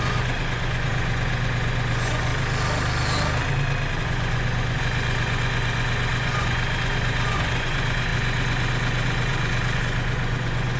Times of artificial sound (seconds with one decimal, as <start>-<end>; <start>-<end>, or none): 0.0-2.3; 4.0-10.8